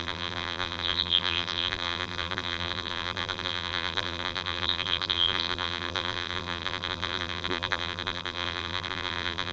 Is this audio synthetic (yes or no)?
yes